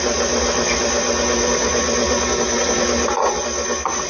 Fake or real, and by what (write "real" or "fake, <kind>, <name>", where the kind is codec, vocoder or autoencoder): real